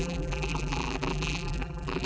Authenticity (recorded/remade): remade